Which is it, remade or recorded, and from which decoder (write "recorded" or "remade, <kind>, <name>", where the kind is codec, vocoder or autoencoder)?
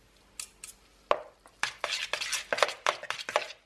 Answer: recorded